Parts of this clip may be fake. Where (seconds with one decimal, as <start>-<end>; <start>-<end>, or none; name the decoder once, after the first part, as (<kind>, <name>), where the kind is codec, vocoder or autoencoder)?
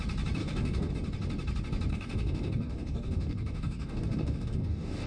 0.4-0.9 (codec, DAC); 1.9-5.1